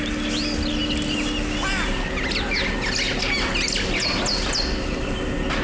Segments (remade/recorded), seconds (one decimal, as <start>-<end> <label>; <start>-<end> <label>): 0.0-5.6 recorded